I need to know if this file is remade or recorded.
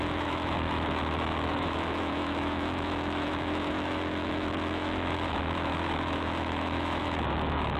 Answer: remade